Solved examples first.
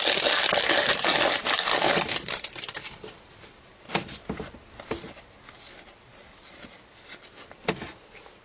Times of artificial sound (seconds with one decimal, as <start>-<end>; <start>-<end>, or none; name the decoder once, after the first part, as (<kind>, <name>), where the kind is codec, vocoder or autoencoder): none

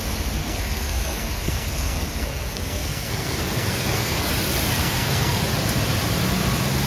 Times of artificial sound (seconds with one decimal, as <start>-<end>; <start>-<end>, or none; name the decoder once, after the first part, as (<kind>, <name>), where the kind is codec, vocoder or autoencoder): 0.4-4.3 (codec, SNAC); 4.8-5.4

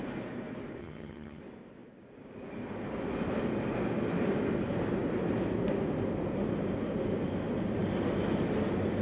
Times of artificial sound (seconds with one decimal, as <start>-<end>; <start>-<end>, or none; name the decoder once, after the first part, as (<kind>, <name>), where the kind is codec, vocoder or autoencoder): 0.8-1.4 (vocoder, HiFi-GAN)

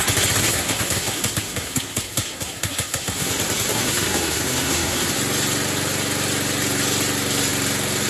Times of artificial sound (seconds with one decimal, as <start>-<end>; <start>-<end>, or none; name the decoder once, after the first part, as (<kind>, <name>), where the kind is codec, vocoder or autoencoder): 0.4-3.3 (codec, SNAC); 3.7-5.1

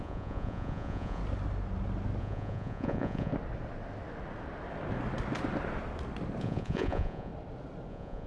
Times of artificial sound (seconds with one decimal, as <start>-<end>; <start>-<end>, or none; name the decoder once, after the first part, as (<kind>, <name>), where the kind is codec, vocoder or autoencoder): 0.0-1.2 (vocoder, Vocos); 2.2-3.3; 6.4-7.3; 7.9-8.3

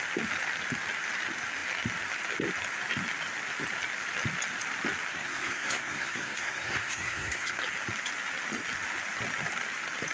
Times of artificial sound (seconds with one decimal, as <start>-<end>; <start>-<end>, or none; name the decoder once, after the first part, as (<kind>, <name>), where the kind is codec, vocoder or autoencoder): 5.1-7.6 (codec, SNAC)

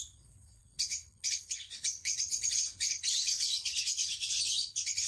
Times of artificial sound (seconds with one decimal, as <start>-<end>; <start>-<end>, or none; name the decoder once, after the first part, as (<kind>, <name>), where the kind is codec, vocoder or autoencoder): 0.0-5.1 (codec, HILCodec)